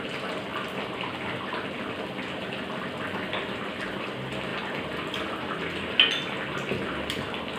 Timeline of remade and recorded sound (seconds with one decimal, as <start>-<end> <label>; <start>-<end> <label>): 0.0-7.6 recorded

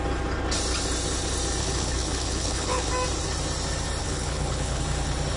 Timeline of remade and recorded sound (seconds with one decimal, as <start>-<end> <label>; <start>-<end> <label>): 0.0-1.6 recorded; 1.6-2.9 remade; 2.9-4.0 recorded; 4.0-4.8 remade; 4.8-5.4 recorded

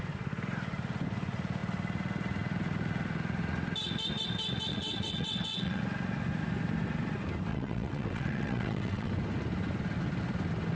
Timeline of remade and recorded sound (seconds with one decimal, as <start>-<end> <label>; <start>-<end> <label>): 0.0-4.7 recorded; 4.7-5.8 remade; 5.8-7.5 recorded; 7.5-9.1 remade; 9.1-10.8 recorded

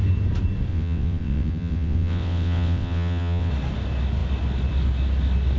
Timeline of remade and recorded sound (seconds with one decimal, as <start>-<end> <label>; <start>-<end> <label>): 0.0-0.7 recorded; 0.7-3.5 remade; 3.5-5.6 recorded

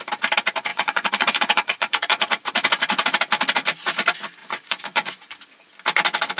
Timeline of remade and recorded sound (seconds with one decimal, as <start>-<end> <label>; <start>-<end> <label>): 0.0-0.7 recorded; 0.7-2.3 remade; 2.3-4.4 recorded; 4.4-5.2 remade; 5.2-6.4 recorded

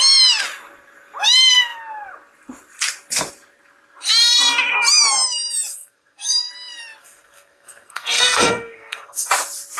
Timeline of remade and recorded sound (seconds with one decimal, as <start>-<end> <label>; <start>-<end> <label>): 0.0-5.7 recorded; 5.7-6.5 remade; 6.5-7.0 recorded; 7.0-9.3 remade; 9.3-9.8 recorded

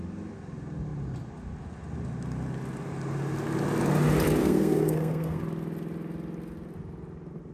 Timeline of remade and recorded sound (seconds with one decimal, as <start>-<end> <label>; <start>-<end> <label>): 0.0-4.4 recorded; 4.4-5.4 remade; 5.4-7.5 recorded